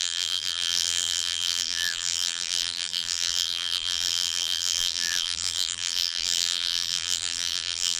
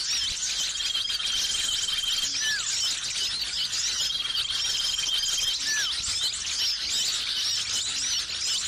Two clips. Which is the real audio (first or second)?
second